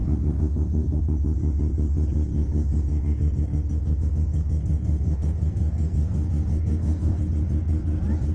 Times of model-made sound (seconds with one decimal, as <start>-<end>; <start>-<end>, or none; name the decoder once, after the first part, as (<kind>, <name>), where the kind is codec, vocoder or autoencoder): 0.0-1.0 (codec, SNAC); 2.3-7.2